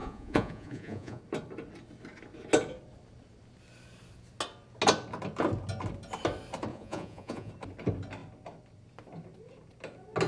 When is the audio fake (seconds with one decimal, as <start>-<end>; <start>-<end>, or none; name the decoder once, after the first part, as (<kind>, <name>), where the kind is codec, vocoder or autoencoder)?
0.0-1.2 (vocoder, Vocos); 6.7-7.5